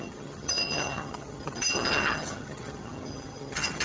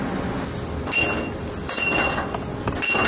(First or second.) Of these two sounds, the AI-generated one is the first